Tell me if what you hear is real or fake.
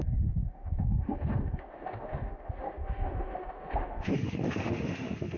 fake